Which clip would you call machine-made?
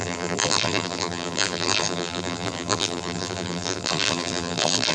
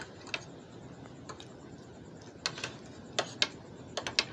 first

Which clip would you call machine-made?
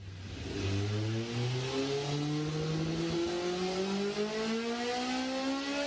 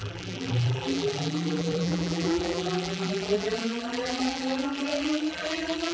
second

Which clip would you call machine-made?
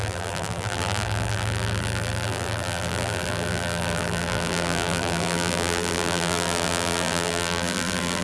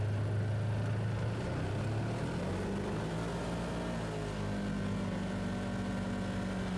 first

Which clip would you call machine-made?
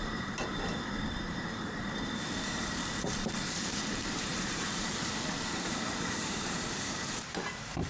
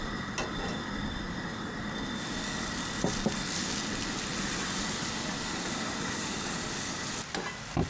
first